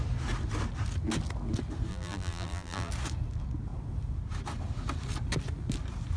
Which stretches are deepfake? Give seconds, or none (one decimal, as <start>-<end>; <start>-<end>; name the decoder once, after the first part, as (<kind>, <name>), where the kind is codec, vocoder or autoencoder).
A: 1.9-2.9 (vocoder, BigVGAN v2)